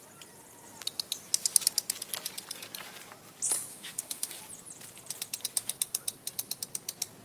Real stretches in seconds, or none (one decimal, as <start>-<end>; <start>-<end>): 0.0-3.7; 4.4-7.2